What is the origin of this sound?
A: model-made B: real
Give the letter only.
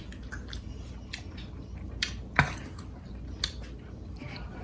B